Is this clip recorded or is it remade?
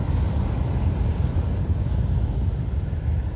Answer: recorded